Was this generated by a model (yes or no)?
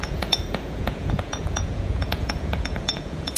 yes